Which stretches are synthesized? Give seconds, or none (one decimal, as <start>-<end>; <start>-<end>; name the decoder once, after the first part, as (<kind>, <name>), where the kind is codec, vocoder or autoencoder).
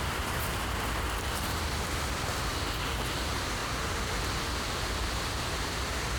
none